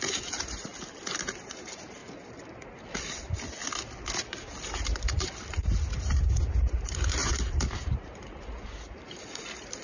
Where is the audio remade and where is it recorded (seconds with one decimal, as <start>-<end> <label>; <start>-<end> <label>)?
0.0-0.7 remade; 0.7-1.5 recorded; 1.5-2.0 remade; 2.0-4.8 recorded; 4.8-9.8 remade